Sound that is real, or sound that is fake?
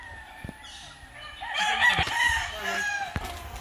real